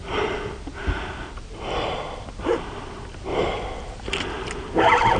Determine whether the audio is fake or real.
real